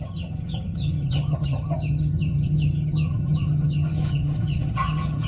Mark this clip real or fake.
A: fake